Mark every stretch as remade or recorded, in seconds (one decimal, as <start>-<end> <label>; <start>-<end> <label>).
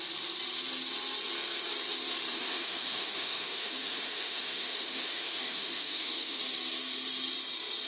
0.0-2.3 recorded; 2.3-6.4 remade; 6.4-7.9 recorded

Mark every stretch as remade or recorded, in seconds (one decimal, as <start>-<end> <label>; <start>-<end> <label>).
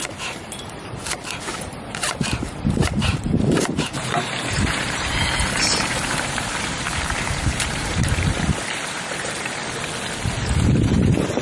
0.0-9.6 remade; 9.6-11.0 recorded; 11.0-11.4 remade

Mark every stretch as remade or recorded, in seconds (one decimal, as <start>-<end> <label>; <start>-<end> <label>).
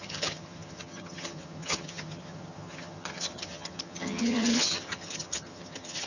0.0-6.1 remade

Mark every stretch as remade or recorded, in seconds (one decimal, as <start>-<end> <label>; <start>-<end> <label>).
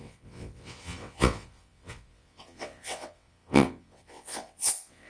0.0-5.1 remade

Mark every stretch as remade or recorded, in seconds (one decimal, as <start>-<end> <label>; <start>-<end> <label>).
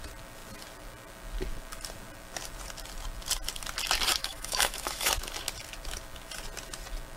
0.0-4.2 recorded; 4.2-5.1 remade; 5.1-7.2 recorded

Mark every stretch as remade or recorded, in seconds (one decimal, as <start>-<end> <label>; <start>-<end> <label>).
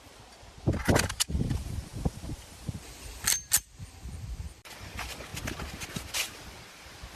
0.0-7.2 recorded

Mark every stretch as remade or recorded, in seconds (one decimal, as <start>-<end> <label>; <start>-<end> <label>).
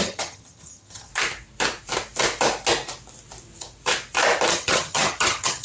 0.0-1.1 remade; 1.1-4.5 recorded; 4.5-5.6 remade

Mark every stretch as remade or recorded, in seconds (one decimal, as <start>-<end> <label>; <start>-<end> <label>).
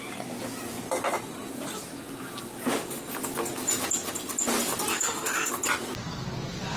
0.0-4.9 recorded; 4.9-5.5 remade; 5.5-6.8 recorded